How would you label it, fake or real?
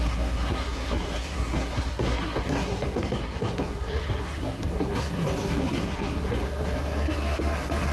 fake